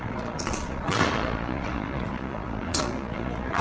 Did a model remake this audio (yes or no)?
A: yes